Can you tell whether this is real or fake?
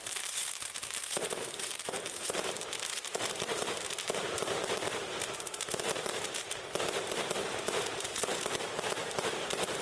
fake